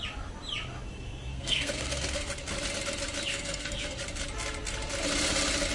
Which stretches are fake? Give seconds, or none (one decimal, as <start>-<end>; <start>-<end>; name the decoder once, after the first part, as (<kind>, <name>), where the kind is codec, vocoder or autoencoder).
1.3-2.3 (codec, SNAC); 3.3-4.0